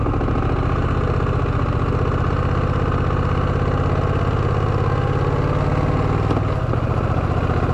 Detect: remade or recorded recorded